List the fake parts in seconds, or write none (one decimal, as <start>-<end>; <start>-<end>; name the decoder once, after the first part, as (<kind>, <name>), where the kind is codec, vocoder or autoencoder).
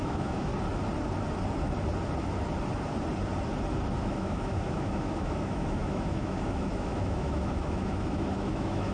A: 0.0-0.5 (autoencoder, DAC-VAE); 4.0-8.9